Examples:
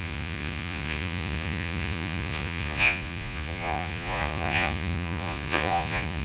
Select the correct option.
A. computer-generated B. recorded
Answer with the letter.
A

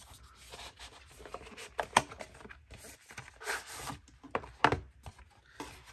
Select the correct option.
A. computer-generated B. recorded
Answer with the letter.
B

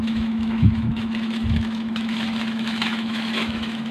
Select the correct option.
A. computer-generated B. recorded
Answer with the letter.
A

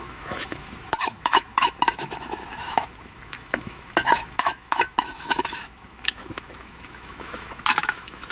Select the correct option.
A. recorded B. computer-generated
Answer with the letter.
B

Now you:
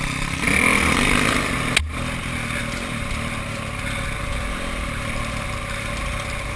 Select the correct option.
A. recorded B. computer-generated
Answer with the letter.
A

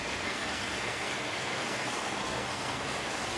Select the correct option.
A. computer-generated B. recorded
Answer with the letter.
A